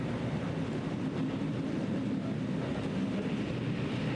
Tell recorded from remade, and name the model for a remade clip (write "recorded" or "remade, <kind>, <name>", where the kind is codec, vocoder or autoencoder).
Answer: recorded